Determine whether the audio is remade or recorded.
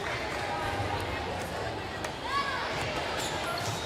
recorded